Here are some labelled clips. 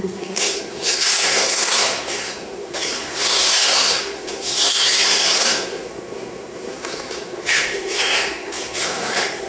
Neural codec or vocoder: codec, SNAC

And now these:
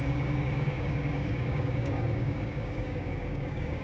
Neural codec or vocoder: codec, DAC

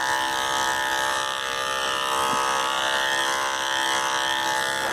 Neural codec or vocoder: none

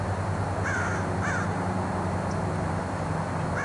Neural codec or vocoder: none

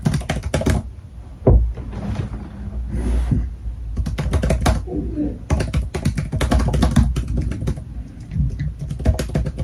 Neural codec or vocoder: none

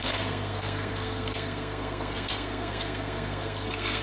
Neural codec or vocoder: codec, SNAC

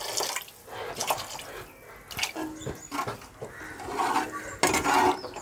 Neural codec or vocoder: none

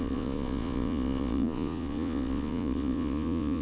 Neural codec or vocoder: vocoder, Vocos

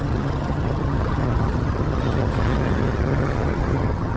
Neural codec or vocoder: vocoder, HiFi-GAN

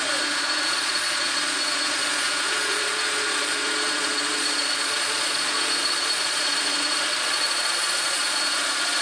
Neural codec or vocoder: vocoder, Vocos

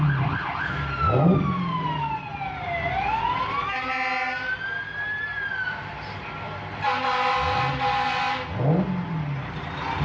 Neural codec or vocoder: none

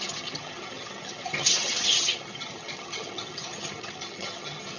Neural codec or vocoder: vocoder, HiFi-GAN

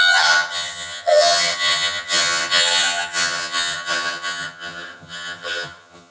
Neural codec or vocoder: vocoder, HiFi-GAN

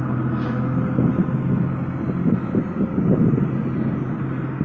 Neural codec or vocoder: none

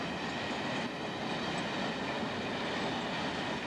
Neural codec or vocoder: none